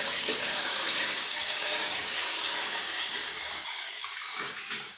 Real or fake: fake